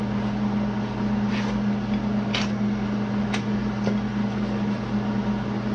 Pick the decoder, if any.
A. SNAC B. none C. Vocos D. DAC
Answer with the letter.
B